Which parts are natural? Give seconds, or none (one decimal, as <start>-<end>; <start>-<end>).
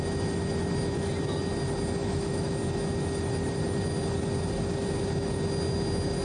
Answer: 0.0-2.0; 2.5-6.2